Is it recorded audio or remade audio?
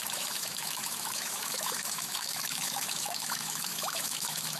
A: remade